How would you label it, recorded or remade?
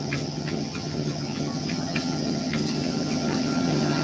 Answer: remade